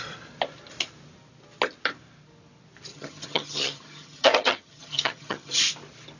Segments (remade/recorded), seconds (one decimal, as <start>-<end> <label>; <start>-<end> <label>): 0.0-2.9 recorded; 2.9-5.6 remade; 5.6-6.2 recorded